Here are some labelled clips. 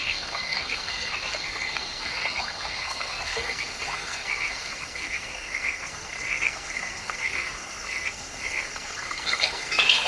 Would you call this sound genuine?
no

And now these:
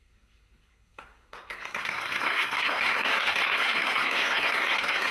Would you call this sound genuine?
no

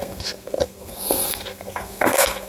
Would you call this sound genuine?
no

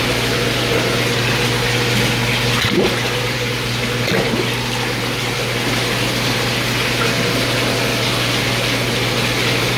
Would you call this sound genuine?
yes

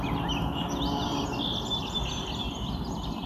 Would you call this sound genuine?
yes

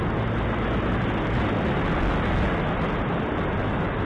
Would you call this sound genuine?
yes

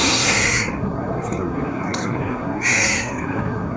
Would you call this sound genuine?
no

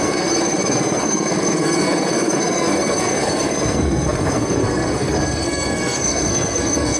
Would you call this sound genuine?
no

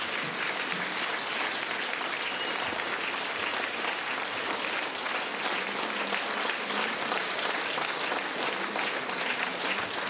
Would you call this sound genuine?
yes